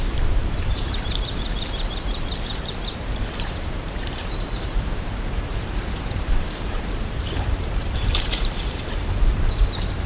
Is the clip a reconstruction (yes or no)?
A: yes